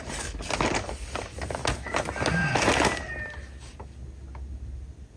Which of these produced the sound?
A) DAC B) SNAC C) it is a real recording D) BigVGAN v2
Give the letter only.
C